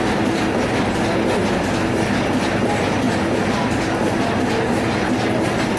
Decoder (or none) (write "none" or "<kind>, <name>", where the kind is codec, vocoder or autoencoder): none